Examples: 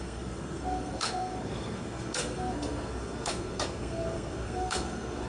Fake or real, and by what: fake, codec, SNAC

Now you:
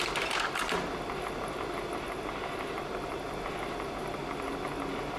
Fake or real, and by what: real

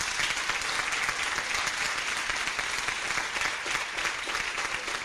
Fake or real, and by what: real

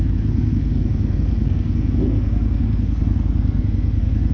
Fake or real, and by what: fake, codec, SNAC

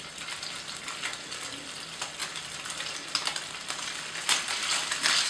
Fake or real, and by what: real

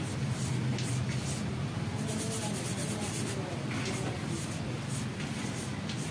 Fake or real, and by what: real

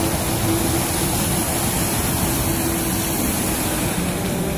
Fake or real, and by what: real